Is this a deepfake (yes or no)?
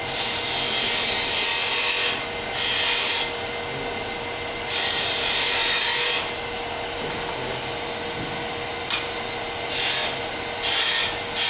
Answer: no